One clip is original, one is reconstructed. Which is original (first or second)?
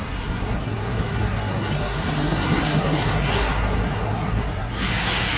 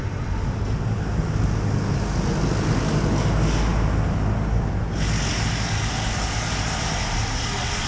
second